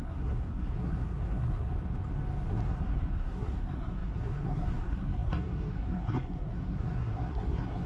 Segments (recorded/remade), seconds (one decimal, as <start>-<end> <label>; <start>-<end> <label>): 0.0-1.7 remade; 1.7-2.5 recorded; 2.5-7.9 remade